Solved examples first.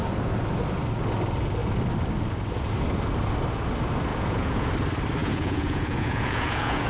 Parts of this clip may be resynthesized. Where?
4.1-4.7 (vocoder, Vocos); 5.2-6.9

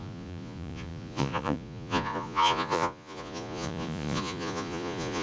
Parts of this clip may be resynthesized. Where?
0.0-5.2 (vocoder, Vocos)

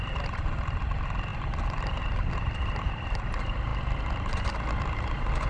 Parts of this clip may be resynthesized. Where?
none

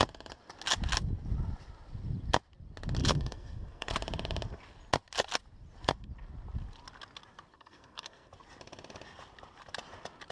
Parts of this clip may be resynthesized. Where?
3.0-3.9 (codec, SNAC); 7.5-8.3